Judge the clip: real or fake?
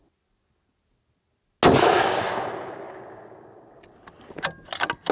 real